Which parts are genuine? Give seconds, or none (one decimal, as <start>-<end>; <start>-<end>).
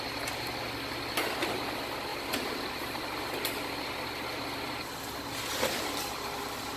0.0-6.8